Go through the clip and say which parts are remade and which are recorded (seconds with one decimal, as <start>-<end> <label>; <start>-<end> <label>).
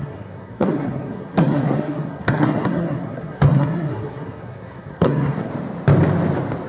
0.0-5.5 remade; 5.5-6.7 recorded